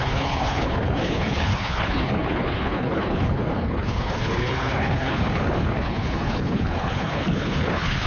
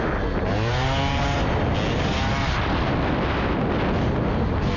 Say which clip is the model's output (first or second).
first